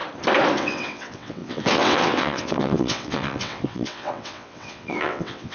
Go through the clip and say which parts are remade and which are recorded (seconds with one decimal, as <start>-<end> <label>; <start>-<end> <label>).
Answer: 0.0-0.6 recorded; 0.6-5.5 remade